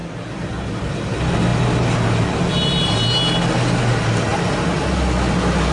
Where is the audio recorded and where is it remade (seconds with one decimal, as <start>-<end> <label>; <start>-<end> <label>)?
0.0-0.5 remade; 0.5-4.3 recorded; 4.3-4.8 remade; 4.8-5.7 recorded